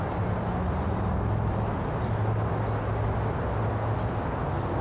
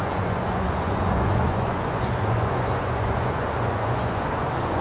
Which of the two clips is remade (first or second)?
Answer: second